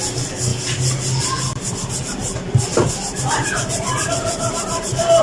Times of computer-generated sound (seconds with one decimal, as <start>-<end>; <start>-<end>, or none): 0.0-0.5; 1.2-2.2; 2.8-5.2